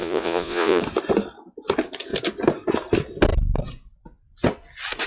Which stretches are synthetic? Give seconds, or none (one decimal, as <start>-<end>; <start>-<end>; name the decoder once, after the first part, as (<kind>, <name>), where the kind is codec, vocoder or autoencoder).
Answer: 0.0-0.8 (vocoder, Vocos)